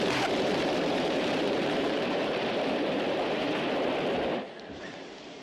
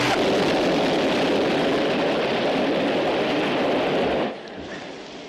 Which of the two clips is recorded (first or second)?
second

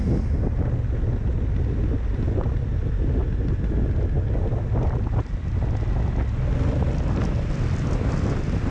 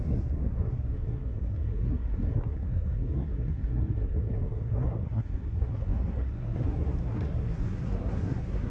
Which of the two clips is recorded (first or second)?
first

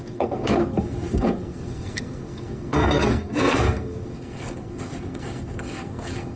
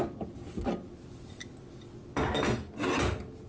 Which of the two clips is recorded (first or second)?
second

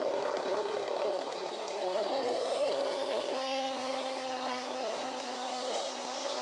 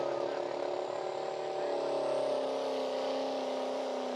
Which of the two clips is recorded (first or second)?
second